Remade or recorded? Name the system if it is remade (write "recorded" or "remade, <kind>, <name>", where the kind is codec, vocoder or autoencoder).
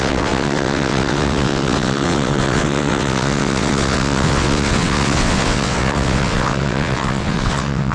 remade, vocoder, WaveNeXt